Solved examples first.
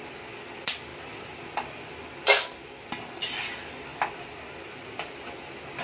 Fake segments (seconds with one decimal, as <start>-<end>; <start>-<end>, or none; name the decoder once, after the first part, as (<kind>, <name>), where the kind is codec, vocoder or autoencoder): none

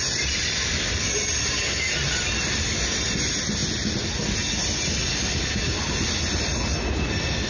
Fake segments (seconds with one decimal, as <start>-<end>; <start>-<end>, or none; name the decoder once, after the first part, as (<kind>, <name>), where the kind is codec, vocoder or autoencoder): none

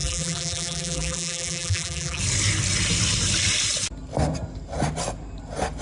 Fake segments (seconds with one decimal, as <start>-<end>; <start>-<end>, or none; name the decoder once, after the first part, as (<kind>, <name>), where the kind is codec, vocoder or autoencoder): 0.0-2.2 (vocoder, BigVGAN v2)